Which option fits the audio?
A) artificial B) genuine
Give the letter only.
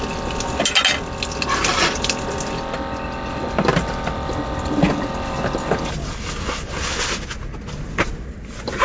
B